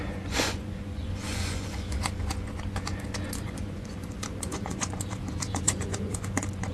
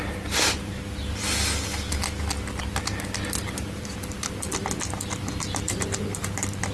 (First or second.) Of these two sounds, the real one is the second